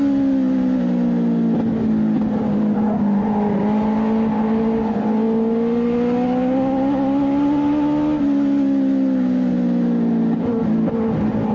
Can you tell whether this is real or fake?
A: real